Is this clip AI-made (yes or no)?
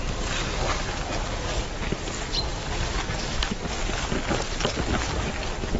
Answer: no